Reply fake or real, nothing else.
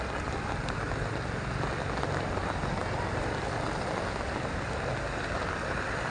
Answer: real